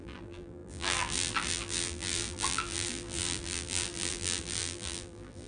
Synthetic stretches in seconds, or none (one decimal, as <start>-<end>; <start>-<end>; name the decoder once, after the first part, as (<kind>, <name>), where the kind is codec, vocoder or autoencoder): 0.0-5.5 (vocoder, BigVGAN v2)